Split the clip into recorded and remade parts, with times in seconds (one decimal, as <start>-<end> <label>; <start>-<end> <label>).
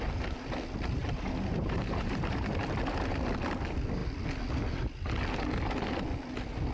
0.0-1.0 recorded; 1.0-2.5 remade; 2.5-6.7 recorded